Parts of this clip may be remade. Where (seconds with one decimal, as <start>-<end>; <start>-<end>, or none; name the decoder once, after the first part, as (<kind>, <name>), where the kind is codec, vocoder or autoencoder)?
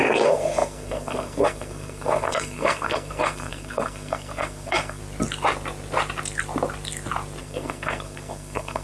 0.0-5.0 (codec, SNAC); 7.4-8.8